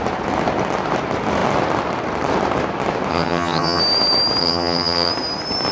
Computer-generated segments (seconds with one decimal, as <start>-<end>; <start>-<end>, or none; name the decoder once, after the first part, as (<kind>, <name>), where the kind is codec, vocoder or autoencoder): 3.1-3.8 (vocoder, HiFi-GAN); 4.4-5.1